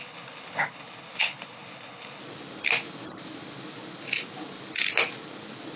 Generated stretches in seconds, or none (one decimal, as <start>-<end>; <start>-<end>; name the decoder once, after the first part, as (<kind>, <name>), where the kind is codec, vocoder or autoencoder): 0.0-2.2 (codec, HILCodec)